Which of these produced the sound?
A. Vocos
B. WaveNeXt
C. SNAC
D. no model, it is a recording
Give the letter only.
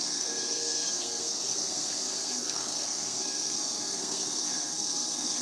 C